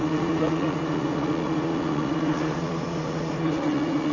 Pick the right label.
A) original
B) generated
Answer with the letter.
B